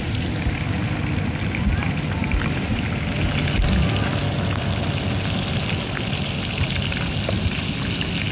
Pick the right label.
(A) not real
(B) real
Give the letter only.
B